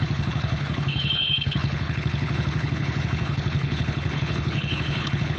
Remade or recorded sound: remade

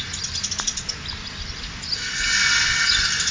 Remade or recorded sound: recorded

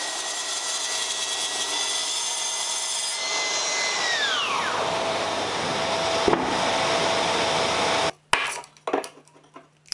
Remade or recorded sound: recorded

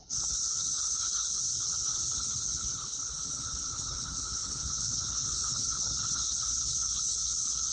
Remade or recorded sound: remade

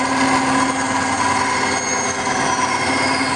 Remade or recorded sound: recorded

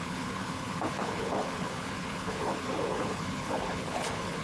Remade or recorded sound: remade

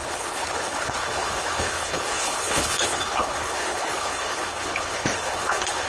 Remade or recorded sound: remade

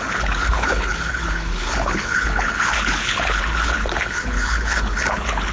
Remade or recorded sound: remade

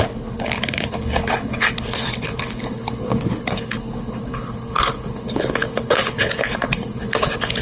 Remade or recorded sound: remade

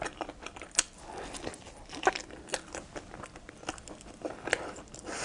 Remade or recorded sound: recorded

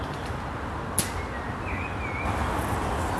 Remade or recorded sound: recorded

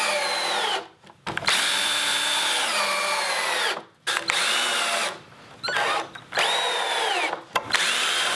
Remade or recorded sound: recorded